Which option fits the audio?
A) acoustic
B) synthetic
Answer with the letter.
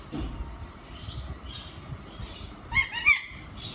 B